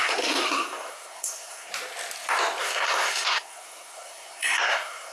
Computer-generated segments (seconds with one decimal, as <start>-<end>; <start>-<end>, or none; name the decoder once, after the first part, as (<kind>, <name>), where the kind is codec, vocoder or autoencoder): 0.0-1.7 (codec, SNAC); 2.6-5.1